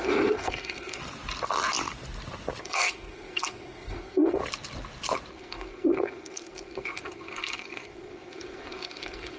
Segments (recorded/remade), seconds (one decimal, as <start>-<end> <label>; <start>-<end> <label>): 0.0-1.0 remade; 1.0-2.6 recorded; 2.6-4.4 remade; 4.4-5.3 recorded; 5.3-9.4 remade